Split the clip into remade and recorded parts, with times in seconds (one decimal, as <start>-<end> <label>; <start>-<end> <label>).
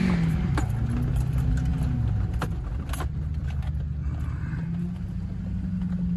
0.0-6.2 recorded